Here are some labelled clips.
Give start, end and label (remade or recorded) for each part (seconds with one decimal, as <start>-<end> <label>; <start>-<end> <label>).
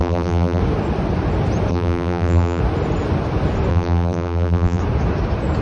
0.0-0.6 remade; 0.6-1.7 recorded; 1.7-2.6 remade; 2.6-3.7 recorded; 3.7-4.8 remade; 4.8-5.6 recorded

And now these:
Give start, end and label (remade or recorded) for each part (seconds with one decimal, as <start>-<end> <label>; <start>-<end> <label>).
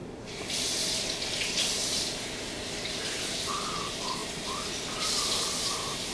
0.0-4.2 remade; 4.2-5.1 recorded; 5.1-6.1 remade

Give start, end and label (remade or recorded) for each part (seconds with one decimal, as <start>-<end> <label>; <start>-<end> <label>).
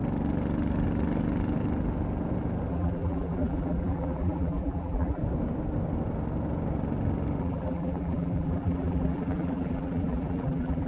0.0-2.7 recorded; 2.7-5.2 remade; 5.2-7.4 recorded; 7.4-10.9 remade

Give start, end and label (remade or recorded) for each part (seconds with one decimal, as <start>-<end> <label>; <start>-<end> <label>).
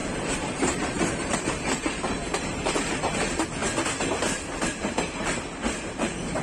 0.0-3.6 remade; 3.6-4.9 recorded; 4.9-6.4 remade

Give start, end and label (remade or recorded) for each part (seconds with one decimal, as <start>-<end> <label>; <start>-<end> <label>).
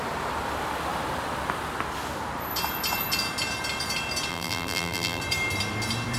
0.0-4.3 recorded; 4.3-5.2 remade; 5.2-6.2 recorded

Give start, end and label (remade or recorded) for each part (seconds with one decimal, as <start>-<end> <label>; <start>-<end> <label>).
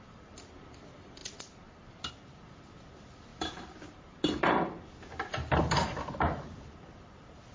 0.0-3.3 recorded; 3.3-4.5 remade; 4.5-7.5 recorded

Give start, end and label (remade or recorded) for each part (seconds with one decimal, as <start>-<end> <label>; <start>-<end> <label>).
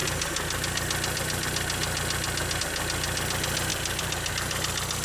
0.0-3.7 recorded; 3.7-4.3 remade; 4.3-5.0 recorded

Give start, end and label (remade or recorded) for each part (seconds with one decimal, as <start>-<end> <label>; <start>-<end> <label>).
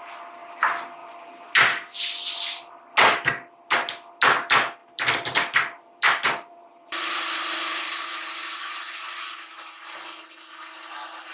0.0-1.0 recorded; 1.0-2.8 remade; 2.8-4.8 recorded; 4.8-8.9 remade; 8.9-11.3 recorded